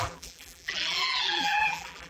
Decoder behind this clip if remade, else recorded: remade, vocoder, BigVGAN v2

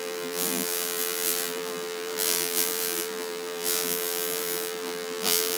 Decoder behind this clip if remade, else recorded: remade, vocoder, BigVGAN v2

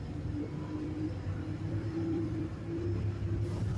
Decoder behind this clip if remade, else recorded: remade, vocoder, BigVGAN v2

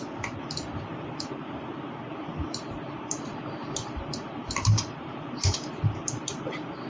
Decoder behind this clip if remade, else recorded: remade, vocoder, BigVGAN v2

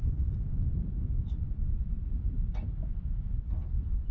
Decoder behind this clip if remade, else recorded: recorded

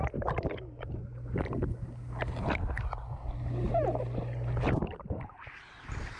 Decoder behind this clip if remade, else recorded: recorded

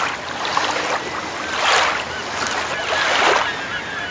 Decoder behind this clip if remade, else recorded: recorded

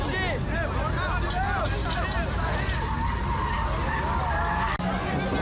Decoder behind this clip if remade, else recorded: recorded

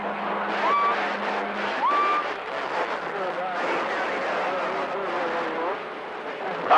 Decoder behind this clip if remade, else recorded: recorded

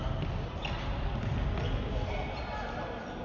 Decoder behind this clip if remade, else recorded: recorded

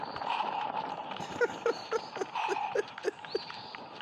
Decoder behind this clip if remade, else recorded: remade, vocoder, BigVGAN v2